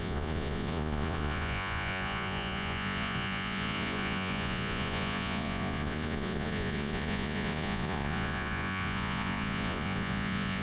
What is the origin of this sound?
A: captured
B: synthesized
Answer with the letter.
B